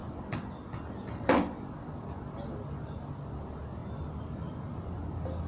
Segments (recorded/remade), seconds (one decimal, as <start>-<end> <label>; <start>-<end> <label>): 0.0-5.5 recorded